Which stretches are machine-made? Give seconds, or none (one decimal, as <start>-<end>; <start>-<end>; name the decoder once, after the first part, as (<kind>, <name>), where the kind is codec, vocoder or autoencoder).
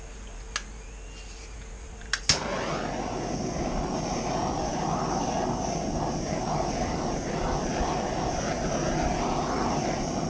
none